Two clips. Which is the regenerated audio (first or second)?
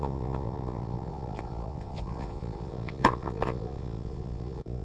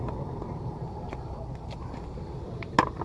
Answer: first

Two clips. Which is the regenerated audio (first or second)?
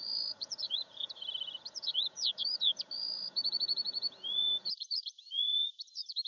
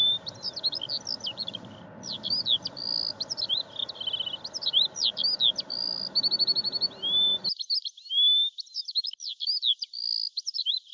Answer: first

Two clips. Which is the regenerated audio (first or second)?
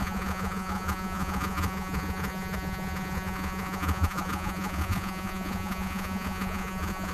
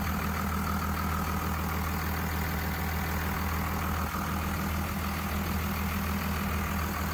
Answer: first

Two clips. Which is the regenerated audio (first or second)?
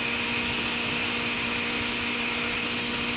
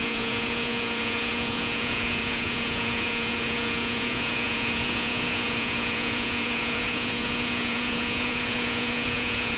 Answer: second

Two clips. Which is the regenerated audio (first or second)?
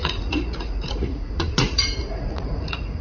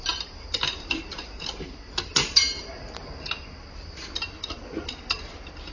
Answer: first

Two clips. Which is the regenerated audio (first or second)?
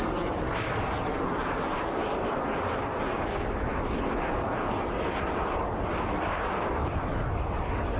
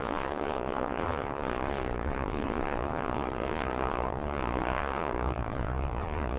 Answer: second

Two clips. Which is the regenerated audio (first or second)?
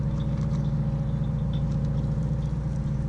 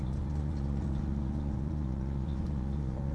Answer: second